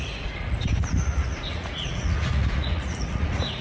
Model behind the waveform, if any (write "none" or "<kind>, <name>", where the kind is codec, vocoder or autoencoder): vocoder, Vocos